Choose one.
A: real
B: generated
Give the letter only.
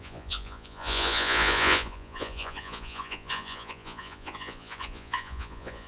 B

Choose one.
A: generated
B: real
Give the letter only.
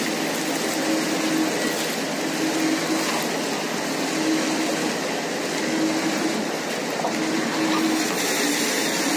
B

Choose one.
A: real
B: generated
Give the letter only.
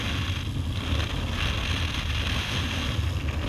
A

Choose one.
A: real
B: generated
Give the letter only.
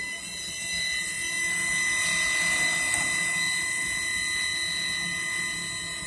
A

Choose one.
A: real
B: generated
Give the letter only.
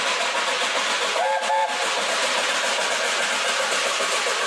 A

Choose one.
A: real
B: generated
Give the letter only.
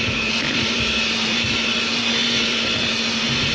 B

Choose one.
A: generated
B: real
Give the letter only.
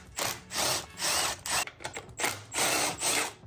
B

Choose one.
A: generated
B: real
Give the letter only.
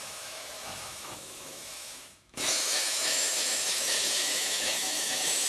A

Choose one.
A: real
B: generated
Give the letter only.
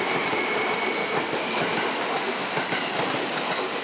A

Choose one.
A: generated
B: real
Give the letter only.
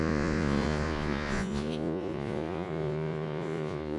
A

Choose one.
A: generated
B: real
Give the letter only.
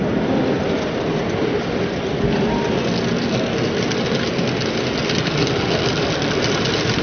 B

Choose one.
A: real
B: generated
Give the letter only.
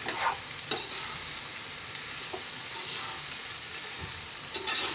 A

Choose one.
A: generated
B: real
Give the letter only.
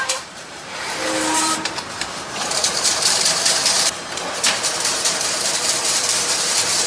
A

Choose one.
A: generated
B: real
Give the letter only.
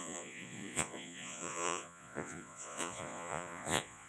A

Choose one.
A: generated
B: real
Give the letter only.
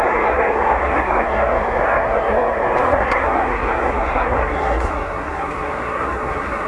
A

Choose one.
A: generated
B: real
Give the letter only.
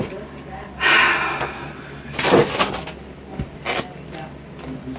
B